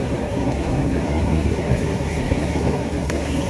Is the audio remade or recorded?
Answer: remade